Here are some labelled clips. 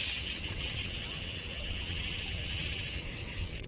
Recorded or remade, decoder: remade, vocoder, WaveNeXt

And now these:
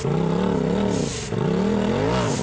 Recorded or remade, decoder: recorded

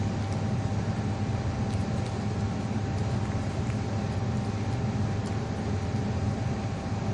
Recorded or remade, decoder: recorded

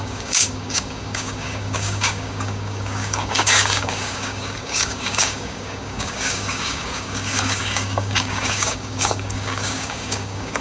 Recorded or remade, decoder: remade, codec, DAC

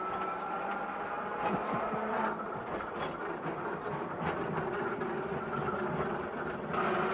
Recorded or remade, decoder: recorded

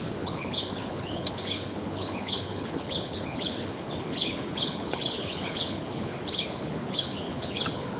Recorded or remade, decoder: remade, codec, HILCodec